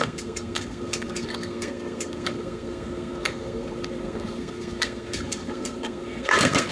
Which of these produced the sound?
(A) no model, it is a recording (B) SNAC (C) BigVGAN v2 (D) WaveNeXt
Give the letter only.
B